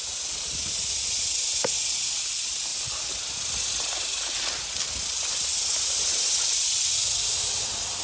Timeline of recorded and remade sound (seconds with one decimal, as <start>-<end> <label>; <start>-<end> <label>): 0.0-8.0 recorded